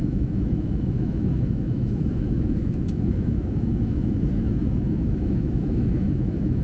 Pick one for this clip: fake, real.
fake